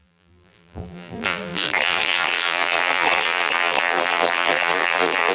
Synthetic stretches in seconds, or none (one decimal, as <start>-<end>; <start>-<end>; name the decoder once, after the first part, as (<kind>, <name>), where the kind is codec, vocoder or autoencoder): 0.0-5.3 (vocoder, BigVGAN v2)